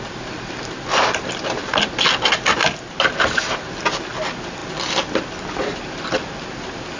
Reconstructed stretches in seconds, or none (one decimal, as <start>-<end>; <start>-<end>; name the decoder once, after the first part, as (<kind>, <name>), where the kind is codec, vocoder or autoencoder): none